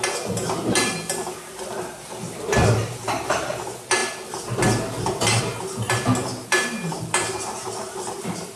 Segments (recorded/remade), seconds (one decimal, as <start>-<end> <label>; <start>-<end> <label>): 0.0-8.6 recorded